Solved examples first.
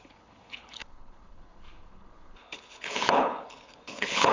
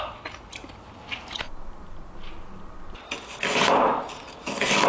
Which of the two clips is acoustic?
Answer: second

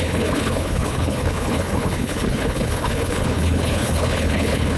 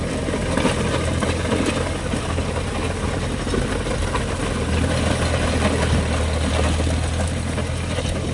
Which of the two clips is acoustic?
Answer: second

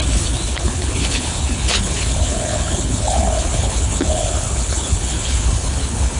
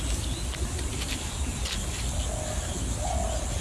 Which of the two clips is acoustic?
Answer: second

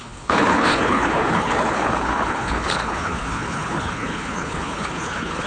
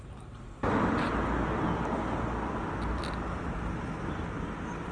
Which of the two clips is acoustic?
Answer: second